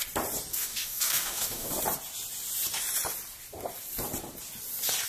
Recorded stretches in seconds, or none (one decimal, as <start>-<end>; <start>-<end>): 0.0-0.5; 1.7-5.1